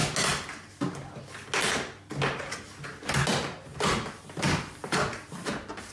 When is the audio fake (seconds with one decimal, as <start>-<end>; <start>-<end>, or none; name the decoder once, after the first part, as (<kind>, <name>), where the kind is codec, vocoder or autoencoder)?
none